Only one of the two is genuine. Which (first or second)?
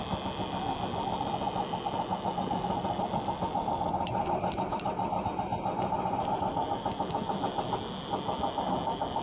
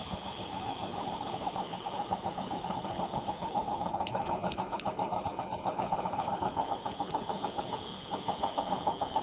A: first